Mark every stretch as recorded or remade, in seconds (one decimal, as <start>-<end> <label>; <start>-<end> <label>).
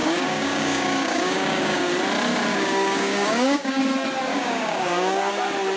0.0-1.9 remade; 1.9-2.5 recorded; 2.5-3.8 remade; 3.8-4.3 recorded; 4.3-5.3 remade; 5.3-5.8 recorded